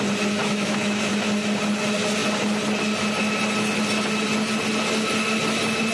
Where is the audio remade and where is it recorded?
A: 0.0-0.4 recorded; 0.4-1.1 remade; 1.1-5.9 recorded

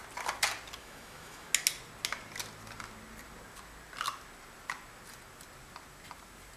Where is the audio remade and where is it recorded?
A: 0.0-0.8 recorded; 0.8-1.5 remade; 1.5-6.6 recorded

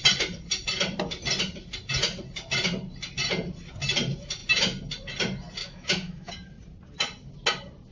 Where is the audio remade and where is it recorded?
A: 0.0-5.6 recorded; 5.6-6.3 remade; 6.3-7.9 recorded

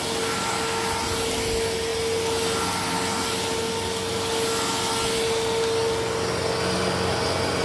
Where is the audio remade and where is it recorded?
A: 0.0-7.6 recorded

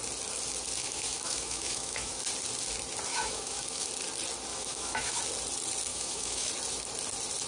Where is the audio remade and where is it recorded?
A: 0.0-0.8 recorded; 0.8-2.2 remade; 2.2-3.1 recorded; 3.1-3.9 remade; 3.9-4.5 recorded; 4.5-5.2 remade; 5.2-5.9 recorded; 5.9-6.5 remade; 6.5-7.5 recorded

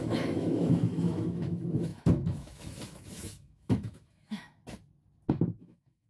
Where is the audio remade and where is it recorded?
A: 0.0-4.6 remade; 4.6-5.3 recorded; 5.3-6.1 remade

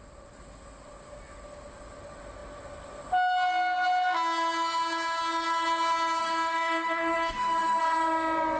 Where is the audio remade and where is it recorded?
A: 0.0-6.2 recorded; 6.2-7.8 remade; 7.8-8.6 recorded

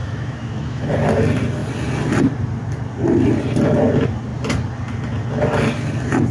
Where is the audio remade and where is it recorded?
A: 0.0-0.8 remade; 0.8-6.3 recorded